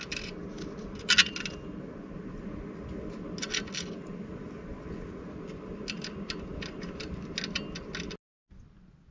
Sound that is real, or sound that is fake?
real